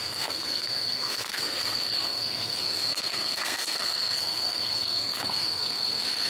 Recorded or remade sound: remade